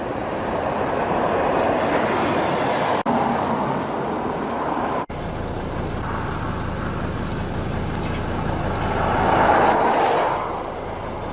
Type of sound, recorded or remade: recorded